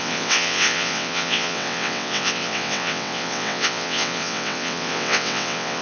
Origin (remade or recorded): remade